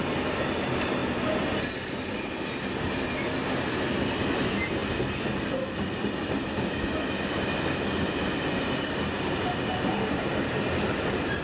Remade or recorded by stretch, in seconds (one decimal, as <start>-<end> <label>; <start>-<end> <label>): 0.0-11.4 recorded